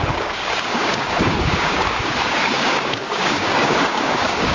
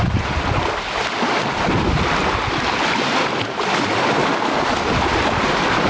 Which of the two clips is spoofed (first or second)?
first